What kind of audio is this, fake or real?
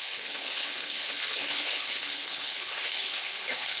fake